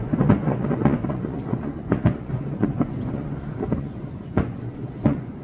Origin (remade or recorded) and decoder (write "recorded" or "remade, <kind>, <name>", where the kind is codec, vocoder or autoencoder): remade, vocoder, Vocos